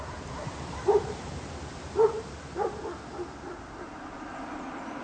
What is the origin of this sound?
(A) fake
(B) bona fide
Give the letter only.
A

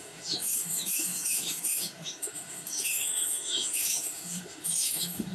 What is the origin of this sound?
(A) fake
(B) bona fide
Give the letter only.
A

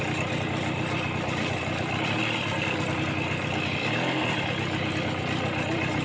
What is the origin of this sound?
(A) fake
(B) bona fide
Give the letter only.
B